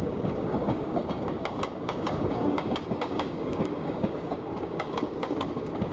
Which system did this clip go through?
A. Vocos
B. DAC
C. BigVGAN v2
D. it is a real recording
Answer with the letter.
B